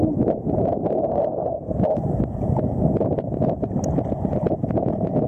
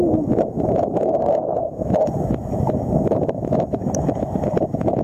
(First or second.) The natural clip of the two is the first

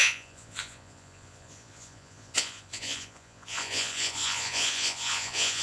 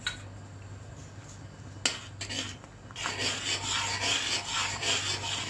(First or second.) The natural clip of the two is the second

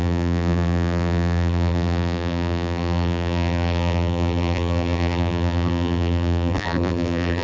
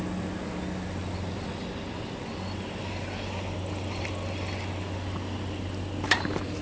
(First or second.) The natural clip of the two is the second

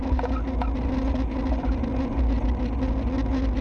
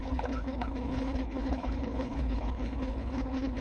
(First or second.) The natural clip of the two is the first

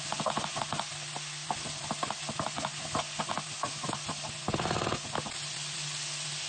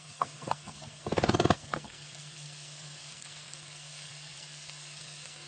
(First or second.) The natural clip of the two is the first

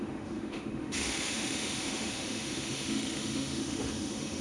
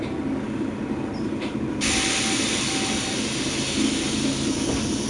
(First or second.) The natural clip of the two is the second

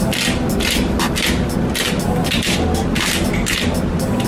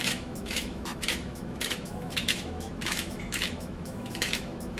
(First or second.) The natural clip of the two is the first